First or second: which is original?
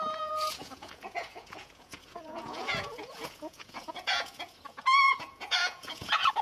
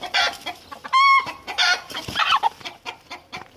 second